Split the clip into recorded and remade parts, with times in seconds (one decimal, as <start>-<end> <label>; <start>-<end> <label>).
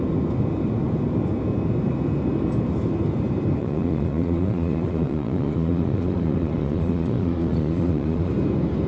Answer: 0.0-3.6 recorded; 3.6-8.3 remade; 8.3-8.9 recorded